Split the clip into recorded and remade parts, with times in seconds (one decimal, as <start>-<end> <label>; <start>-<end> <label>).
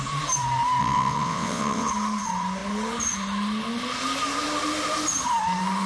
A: 0.0-0.8 recorded; 0.8-1.9 remade; 1.9-5.9 recorded